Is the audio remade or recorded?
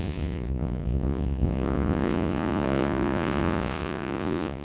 remade